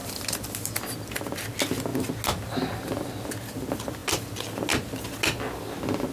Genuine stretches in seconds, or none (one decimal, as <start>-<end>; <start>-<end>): 0.0-6.1